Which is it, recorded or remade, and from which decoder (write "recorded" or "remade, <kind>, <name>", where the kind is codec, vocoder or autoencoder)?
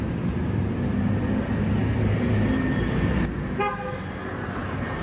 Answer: remade, vocoder, BigVGAN v2